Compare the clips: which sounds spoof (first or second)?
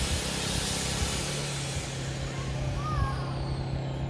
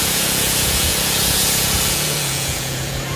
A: second